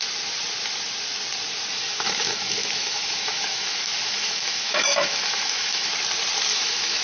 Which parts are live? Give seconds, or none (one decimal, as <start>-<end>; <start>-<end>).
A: 0.0-1.7; 5.9-6.5